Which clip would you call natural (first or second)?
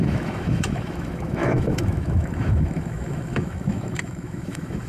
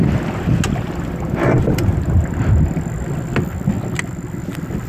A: second